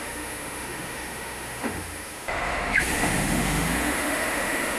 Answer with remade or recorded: remade